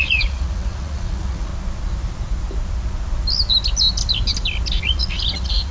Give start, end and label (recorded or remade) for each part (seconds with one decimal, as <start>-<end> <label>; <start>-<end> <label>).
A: 0.0-1.5 remade; 1.5-4.8 recorded; 4.8-5.7 remade